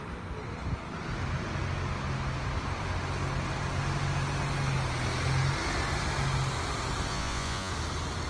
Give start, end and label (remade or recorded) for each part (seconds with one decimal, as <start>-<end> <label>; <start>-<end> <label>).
0.0-7.1 recorded; 7.1-7.7 remade; 7.7-8.3 recorded